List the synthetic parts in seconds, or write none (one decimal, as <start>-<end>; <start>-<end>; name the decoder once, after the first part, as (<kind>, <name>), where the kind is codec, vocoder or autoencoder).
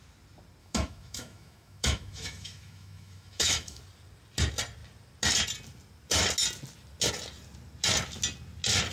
0.6-3.8 (autoencoder, DAC-VAE)